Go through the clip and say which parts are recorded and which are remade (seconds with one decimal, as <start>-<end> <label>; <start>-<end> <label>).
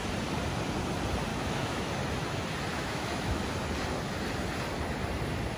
0.0-1.3 recorded; 1.3-1.9 remade; 1.9-2.7 recorded; 2.7-3.4 remade; 3.4-5.6 recorded